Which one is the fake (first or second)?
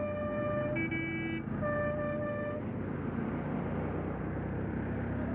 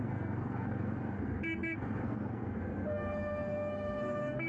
second